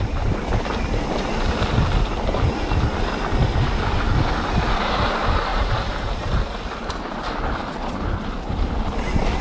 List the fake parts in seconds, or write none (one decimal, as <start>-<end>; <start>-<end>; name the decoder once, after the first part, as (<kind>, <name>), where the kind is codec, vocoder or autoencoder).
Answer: 5.5-7.3 (vocoder, BigVGAN v2)